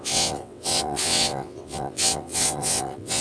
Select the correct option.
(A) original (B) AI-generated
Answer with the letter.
B